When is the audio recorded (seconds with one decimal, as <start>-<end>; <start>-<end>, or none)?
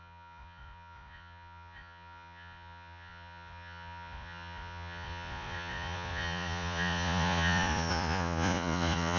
none